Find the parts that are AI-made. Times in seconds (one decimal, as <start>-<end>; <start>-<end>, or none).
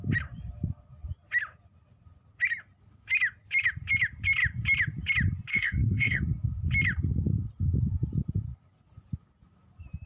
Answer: 5.5-6.2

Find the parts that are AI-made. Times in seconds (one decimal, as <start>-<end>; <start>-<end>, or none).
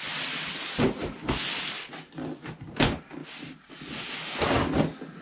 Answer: none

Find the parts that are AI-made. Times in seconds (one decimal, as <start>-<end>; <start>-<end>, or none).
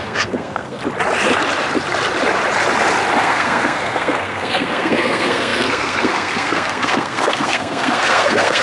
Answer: 0.0-0.8; 3.2-8.6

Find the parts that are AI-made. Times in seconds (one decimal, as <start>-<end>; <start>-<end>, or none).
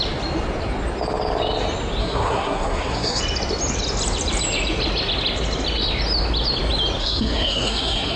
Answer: 2.0-3.2; 7.0-8.2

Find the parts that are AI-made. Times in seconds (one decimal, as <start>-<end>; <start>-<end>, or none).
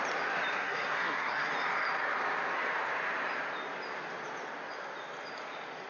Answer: 0.5-1.5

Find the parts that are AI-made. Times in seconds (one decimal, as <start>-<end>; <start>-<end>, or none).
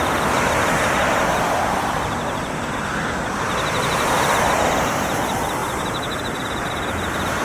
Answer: none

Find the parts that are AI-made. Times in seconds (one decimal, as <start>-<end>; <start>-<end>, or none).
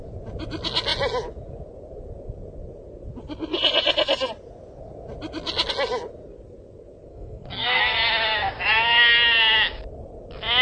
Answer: 7.1-7.8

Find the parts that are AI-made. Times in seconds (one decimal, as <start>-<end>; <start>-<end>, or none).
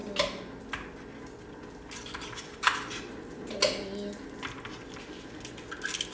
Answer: none